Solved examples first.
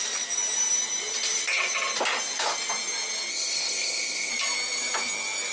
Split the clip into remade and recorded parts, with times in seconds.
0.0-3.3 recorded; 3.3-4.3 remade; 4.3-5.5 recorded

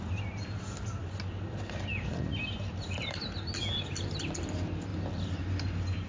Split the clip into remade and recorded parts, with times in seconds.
0.0-6.1 recorded

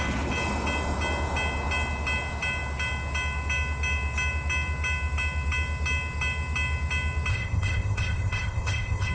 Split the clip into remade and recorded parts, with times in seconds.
0.0-7.3 recorded; 7.3-9.1 remade

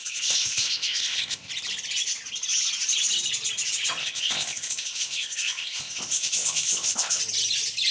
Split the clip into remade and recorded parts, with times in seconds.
0.0-1.5 remade; 1.5-4.0 recorded; 4.0-7.2 remade; 7.2-7.9 recorded

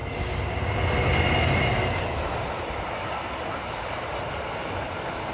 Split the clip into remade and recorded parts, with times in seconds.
0.0-5.3 recorded

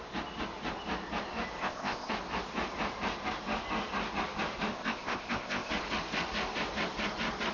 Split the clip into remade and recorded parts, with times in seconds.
0.0-1.6 recorded; 1.6-2.1 remade; 2.1-4.7 recorded; 4.7-5.7 remade; 5.7-7.5 recorded

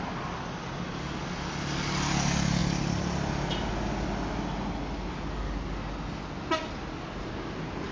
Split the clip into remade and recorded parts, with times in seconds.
0.0-7.9 recorded

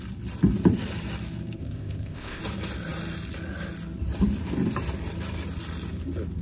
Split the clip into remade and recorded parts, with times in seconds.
0.0-1.6 recorded; 1.6-2.4 remade; 2.4-6.4 recorded